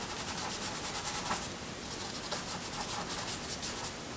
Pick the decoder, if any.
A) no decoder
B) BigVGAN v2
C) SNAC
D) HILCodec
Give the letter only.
A